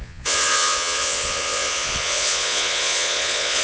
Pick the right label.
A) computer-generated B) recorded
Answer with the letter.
A